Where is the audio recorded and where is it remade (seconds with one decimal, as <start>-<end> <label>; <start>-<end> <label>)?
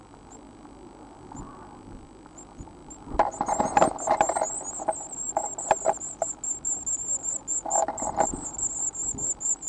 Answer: 0.0-9.7 recorded